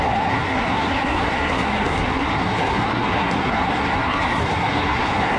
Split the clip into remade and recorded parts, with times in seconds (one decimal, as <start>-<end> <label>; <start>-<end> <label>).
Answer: 0.0-5.4 remade